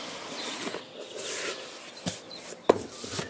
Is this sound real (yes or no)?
yes